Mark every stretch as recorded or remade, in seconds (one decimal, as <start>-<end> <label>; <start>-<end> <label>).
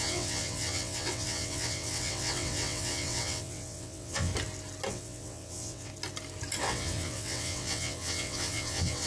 0.0-4.3 remade; 4.3-4.9 recorded; 4.9-5.9 remade; 5.9-6.6 recorded; 6.6-9.1 remade